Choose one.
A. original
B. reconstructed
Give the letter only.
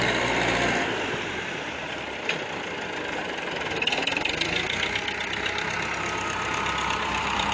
B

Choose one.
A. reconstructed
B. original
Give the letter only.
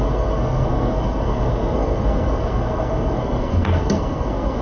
A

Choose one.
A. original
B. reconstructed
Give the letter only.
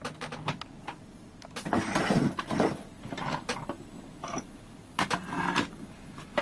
A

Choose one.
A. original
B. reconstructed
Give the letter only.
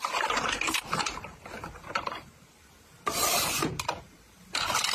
A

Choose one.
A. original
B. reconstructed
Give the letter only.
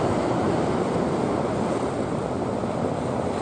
A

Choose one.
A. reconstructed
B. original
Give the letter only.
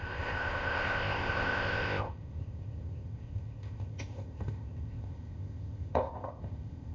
A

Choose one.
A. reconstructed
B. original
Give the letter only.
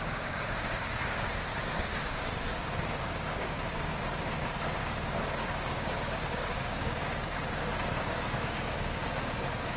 A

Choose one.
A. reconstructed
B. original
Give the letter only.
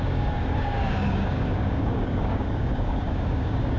A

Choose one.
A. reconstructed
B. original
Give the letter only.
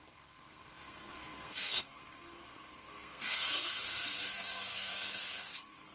A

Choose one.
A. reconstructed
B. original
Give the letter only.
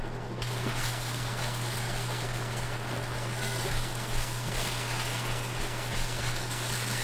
A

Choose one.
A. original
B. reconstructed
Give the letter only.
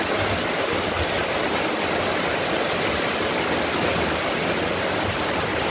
A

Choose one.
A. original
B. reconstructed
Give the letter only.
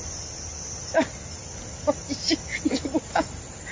A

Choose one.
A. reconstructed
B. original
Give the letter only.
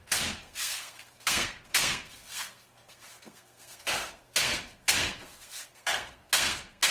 A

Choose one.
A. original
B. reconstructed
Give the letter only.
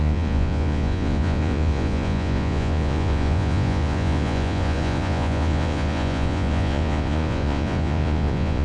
B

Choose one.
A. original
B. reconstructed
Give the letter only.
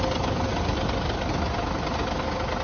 A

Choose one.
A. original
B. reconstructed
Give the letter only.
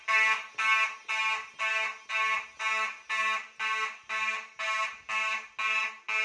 A